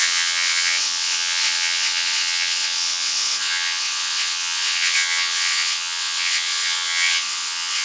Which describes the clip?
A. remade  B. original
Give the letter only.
A